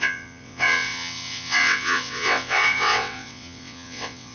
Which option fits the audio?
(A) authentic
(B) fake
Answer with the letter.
B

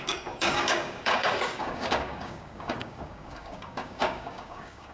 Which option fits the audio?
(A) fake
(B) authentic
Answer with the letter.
A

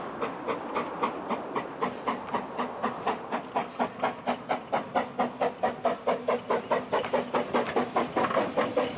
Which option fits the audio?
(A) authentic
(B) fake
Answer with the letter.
A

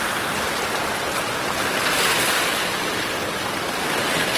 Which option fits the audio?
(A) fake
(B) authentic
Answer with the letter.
B